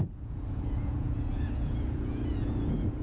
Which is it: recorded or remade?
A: remade